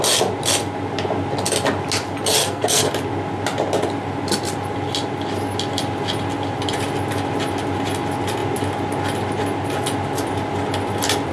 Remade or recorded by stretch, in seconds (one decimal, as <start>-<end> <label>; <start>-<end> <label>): 0.0-2.4 recorded; 2.4-2.9 remade; 2.9-11.3 recorded